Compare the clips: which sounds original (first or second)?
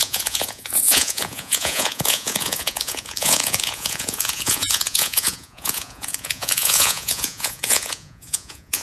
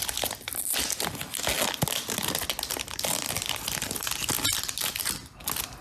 second